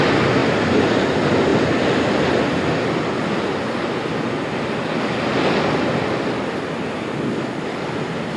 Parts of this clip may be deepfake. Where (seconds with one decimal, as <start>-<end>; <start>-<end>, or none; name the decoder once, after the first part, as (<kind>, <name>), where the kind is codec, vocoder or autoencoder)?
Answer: none